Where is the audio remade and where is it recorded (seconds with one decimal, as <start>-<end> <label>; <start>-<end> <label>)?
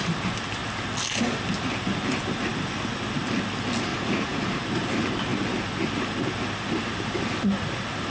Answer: 0.0-3.9 recorded; 3.9-4.6 remade; 4.6-8.1 recorded